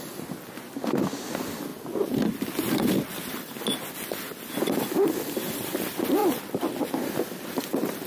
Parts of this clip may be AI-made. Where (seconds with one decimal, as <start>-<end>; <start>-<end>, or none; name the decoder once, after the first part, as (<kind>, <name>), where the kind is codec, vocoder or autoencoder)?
none